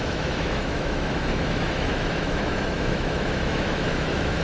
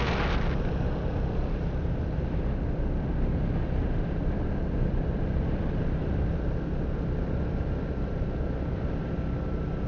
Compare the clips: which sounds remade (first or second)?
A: first